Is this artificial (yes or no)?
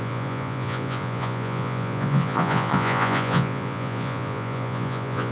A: yes